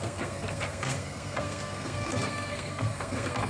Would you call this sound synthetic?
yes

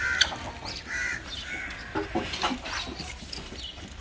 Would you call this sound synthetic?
no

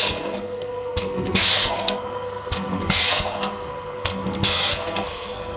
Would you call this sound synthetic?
yes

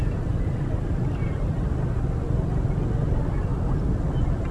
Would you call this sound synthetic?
no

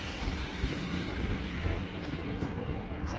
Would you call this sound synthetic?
yes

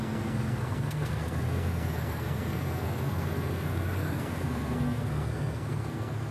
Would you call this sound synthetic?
yes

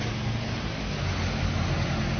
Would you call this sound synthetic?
no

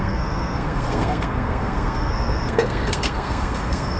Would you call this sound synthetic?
yes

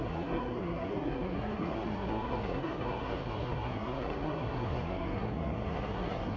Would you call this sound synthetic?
yes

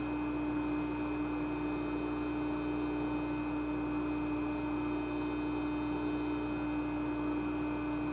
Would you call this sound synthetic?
no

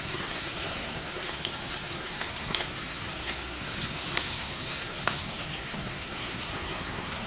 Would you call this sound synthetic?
yes